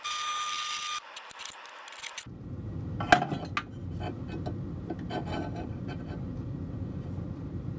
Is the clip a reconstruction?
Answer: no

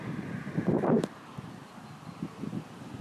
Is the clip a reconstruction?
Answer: no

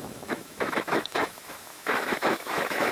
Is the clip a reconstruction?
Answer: yes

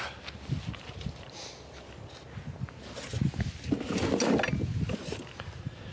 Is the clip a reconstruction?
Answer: no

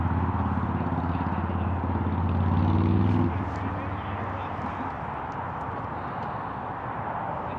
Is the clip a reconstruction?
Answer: no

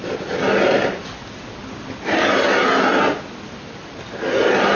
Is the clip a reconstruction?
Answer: no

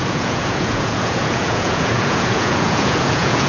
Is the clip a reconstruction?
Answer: yes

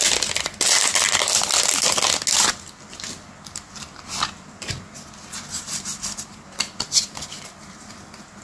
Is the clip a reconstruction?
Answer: no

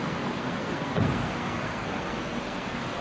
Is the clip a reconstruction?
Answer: yes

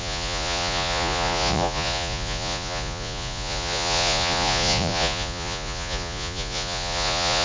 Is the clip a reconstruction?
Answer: yes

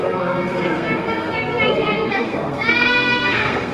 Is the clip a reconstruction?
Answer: yes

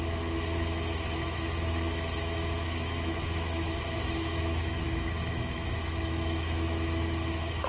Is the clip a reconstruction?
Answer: yes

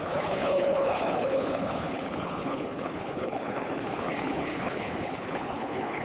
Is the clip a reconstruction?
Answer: yes